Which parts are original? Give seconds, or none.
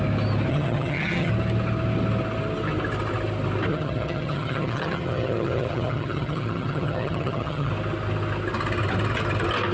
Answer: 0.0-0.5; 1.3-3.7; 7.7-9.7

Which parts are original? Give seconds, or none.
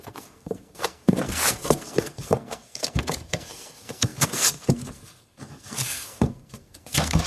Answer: none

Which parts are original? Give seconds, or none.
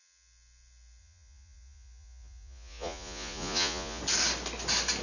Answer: 0.0-1.0; 4.0-5.0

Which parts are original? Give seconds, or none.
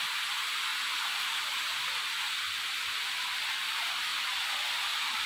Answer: none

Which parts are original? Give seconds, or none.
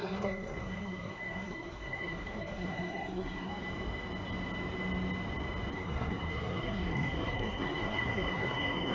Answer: 3.5-5.7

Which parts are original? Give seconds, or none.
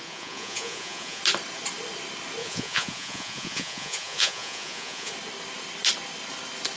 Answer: 1.2-2.4; 5.1-6.8